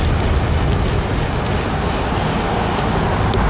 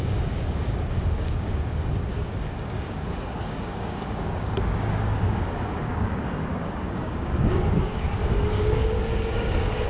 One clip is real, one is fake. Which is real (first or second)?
first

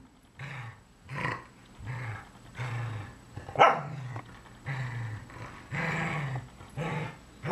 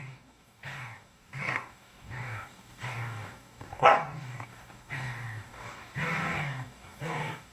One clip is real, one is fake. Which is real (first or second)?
first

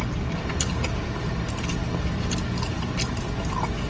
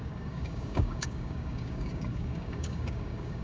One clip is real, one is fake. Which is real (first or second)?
first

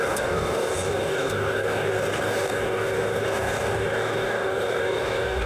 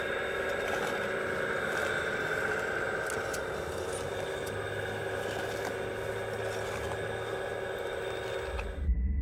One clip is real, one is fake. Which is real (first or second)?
second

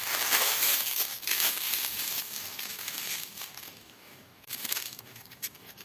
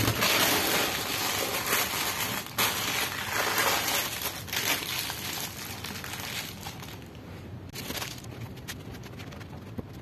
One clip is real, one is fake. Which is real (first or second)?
second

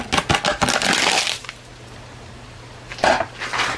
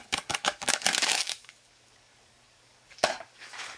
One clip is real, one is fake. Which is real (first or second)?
first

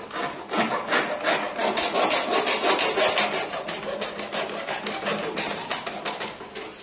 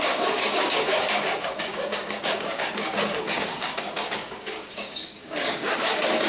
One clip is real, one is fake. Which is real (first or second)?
first